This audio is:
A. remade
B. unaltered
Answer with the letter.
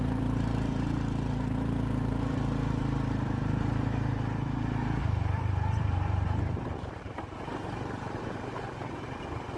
A